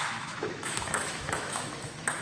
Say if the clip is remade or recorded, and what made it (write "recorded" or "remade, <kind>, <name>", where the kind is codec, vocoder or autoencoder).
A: remade, autoencoder, DAC-VAE